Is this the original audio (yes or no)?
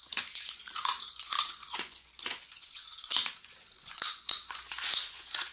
no